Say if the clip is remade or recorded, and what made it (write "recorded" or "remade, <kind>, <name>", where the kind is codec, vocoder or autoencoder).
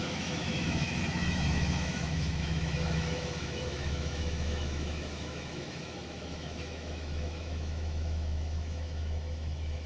remade, autoencoder, DAC-VAE